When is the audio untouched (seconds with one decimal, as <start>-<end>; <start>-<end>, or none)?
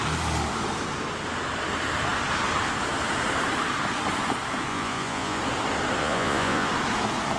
0.0-4.7; 5.4-6.0; 6.7-7.4